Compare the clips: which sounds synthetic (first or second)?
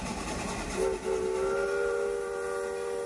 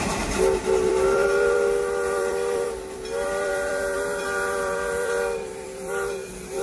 second